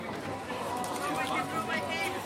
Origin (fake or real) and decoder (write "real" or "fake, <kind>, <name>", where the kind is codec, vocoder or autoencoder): real